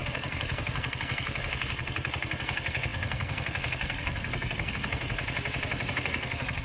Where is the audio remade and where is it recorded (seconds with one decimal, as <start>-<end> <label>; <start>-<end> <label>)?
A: 0.0-5.2 remade; 5.2-5.9 recorded; 5.9-6.6 remade